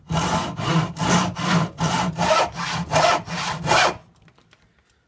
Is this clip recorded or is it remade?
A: recorded